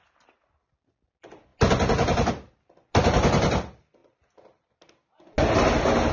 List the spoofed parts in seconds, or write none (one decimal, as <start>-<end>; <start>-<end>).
none